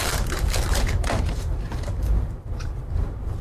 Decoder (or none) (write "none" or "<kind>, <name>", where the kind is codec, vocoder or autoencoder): vocoder, BigVGAN v2